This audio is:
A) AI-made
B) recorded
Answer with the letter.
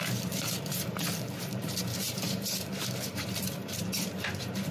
A